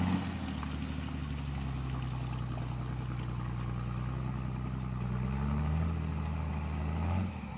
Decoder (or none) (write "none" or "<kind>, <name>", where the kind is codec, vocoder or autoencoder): none